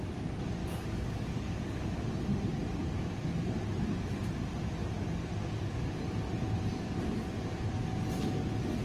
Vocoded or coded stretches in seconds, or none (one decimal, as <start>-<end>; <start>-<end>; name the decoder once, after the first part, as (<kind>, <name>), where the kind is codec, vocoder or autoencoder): 0.6-1.9 (codec, DAC)